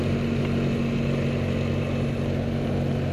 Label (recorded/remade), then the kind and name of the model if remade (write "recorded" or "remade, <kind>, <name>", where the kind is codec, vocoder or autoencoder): recorded